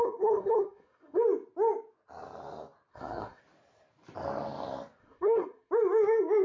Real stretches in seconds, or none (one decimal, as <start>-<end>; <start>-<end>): 1.2-2.9; 3.4-5.0; 5.7-6.4